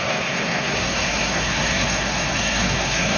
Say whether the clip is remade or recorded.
remade